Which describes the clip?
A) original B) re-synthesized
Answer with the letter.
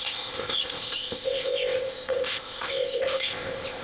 B